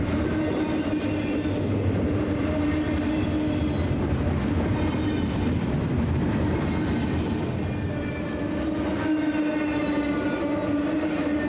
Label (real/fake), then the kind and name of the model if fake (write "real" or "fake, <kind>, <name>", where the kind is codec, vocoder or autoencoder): real